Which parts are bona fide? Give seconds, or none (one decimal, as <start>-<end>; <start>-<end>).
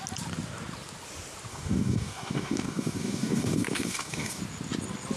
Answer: 0.0-1.5; 4.4-5.2